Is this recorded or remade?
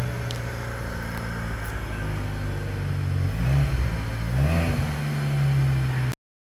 recorded